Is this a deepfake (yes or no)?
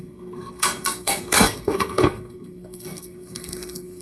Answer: yes